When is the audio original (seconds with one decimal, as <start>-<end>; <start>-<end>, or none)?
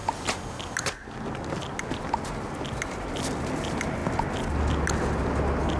0.0-5.8